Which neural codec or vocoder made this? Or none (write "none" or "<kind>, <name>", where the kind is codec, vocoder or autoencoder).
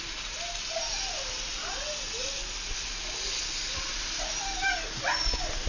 none